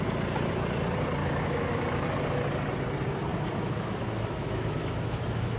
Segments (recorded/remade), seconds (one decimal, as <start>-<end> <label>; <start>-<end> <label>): 0.0-1.2 recorded; 1.2-2.0 remade; 2.0-3.3 recorded; 3.3-5.6 remade